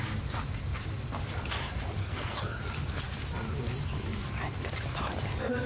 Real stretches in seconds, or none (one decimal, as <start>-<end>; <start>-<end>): 0.0-2.0; 2.6-5.7